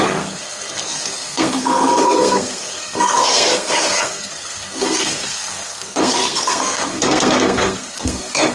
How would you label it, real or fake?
fake